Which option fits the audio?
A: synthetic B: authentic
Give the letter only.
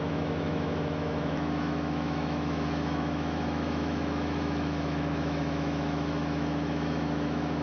A